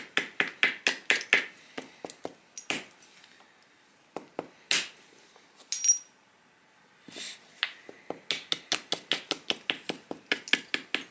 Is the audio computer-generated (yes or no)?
no